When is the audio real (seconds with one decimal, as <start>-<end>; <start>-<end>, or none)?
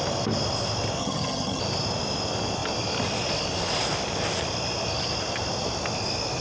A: 0.0-1.0; 1.6-6.4